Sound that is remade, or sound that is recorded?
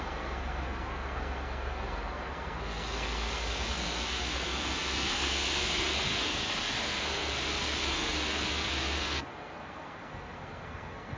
remade